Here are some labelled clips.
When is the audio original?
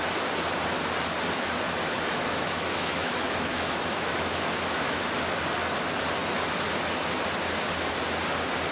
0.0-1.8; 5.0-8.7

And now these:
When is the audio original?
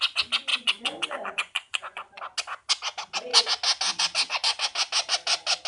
0.0-0.5; 2.2-5.7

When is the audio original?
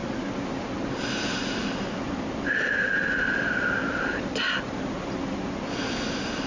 0.0-6.5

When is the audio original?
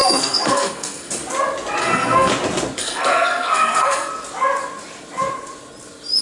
1.1-1.8; 2.3-2.8; 4.1-6.2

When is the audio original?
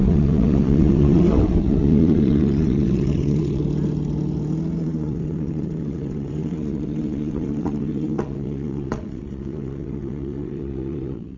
3.6-4.8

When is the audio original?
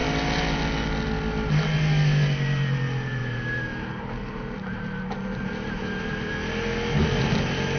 0.0-3.2; 6.3-7.8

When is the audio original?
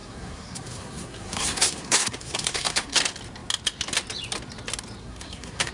3.0-5.0